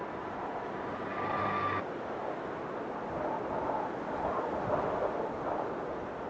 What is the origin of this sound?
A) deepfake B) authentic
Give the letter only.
B